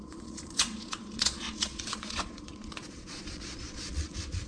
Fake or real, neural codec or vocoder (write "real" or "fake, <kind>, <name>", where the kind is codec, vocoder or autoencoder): fake, vocoder, Vocos